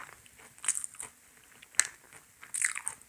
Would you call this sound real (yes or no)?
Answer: yes